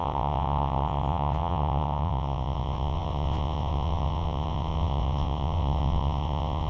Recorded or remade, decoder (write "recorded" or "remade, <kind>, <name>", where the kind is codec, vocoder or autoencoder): remade, vocoder, WaveNeXt